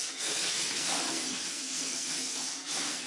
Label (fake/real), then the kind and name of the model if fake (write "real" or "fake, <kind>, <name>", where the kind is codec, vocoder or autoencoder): fake, codec, SNAC